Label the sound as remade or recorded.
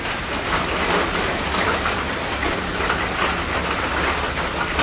recorded